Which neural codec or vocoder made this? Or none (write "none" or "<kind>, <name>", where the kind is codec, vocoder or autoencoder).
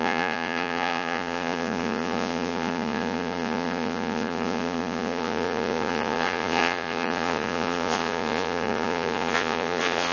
vocoder, Vocos